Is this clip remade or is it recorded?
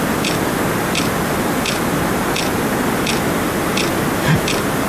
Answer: recorded